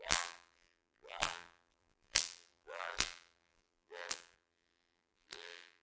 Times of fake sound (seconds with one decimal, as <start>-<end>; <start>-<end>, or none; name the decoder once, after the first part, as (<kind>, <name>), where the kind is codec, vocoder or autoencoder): 0.0-5.8 (vocoder, BigVGAN v2)